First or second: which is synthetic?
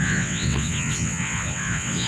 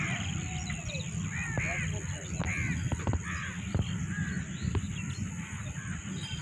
first